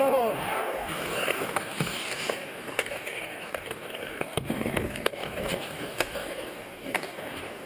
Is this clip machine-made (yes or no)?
yes